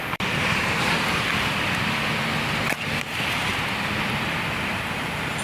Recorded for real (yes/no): no